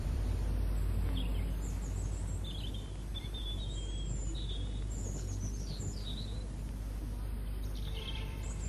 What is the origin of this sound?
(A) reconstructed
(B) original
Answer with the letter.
A